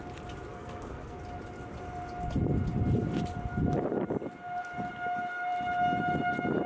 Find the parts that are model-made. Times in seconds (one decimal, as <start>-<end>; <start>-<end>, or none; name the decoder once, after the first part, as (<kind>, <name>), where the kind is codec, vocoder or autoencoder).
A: 0.5-1.2 (codec, SNAC)